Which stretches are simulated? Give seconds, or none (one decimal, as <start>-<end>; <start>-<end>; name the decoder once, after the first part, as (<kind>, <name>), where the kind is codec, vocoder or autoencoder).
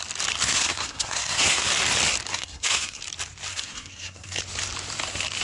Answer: 0.4-1.7 (codec, SNAC); 2.3-3.0; 3.5-4.4